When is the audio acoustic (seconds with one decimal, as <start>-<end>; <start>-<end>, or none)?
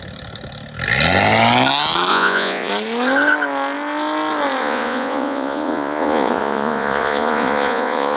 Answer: 0.0-2.1; 2.7-4.6